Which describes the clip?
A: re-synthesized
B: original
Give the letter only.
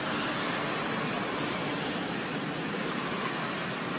B